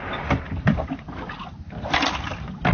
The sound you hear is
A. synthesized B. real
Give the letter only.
B